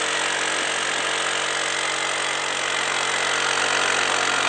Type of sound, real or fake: real